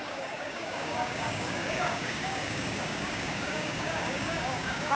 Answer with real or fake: fake